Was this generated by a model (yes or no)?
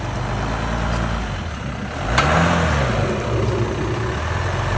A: no